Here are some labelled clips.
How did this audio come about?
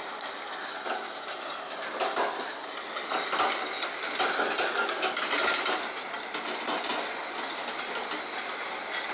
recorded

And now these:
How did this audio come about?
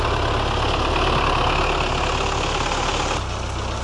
recorded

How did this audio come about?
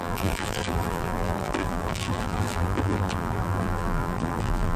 remade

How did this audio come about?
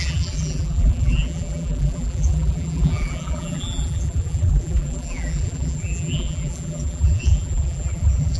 remade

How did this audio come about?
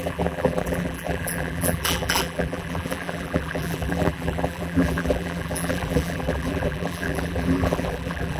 remade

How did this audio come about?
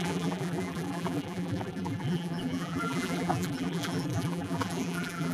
remade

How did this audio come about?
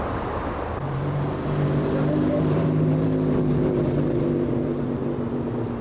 remade